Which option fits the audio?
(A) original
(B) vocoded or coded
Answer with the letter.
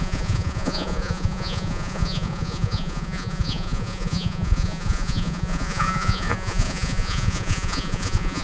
B